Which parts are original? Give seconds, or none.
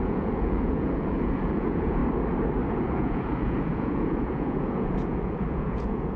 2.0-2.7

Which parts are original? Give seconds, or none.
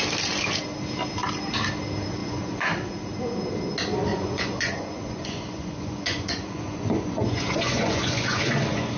0.0-2.2; 2.7-4.1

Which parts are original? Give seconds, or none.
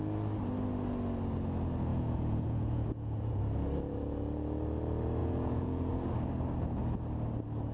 0.0-1.9; 3.4-5.2; 5.9-7.7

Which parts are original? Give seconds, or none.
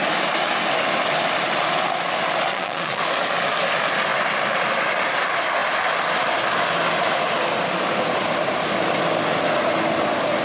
0.0-2.5; 3.0-10.4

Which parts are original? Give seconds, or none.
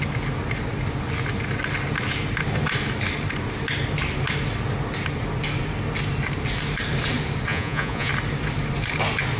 0.0-7.5; 8.1-9.4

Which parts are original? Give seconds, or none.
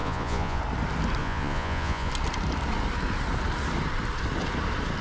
0.6-1.2; 2.1-5.0